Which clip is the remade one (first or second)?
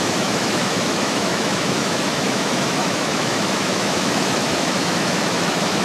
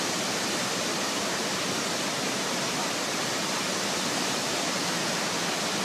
first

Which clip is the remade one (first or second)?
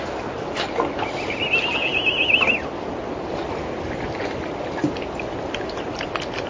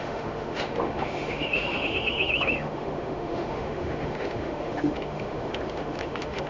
second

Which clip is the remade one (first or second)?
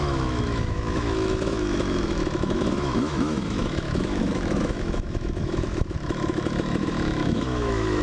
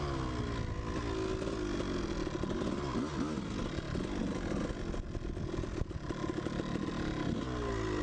first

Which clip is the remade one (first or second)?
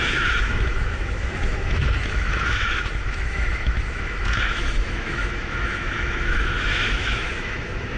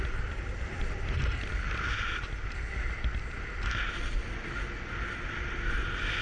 first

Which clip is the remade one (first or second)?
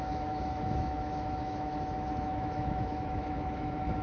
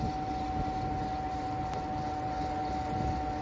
first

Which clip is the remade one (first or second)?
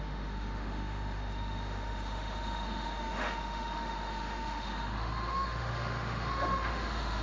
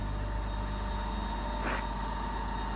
first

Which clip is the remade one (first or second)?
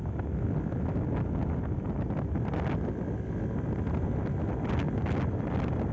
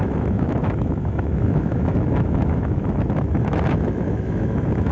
second